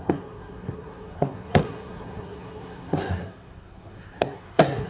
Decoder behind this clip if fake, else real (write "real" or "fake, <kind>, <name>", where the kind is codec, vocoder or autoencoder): fake, codec, SNAC